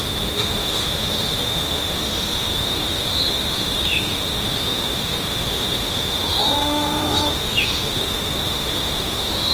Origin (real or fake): fake